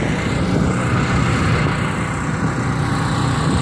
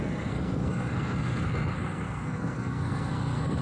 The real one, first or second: first